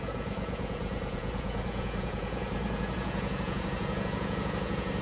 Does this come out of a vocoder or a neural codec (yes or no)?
yes